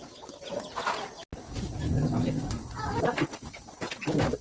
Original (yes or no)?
yes